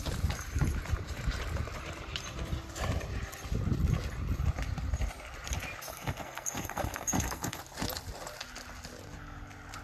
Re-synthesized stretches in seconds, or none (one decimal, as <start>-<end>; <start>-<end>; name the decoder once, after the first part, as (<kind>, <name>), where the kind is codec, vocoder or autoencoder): 5.9-7.6 (codec, SNAC)